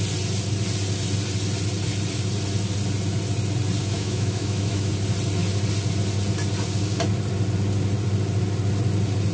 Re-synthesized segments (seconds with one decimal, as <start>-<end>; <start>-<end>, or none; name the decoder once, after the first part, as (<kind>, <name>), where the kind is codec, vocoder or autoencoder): 3.8-4.9 (autoencoder, DAC-VAE)